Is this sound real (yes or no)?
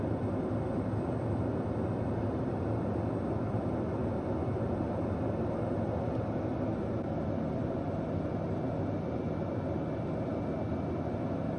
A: yes